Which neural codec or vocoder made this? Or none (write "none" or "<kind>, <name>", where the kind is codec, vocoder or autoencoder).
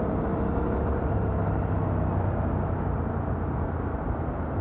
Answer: none